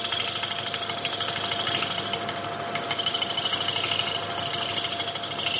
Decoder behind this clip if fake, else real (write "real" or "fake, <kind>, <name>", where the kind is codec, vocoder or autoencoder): real